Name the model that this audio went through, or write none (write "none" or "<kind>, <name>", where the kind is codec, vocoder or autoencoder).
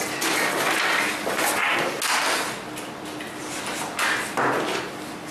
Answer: none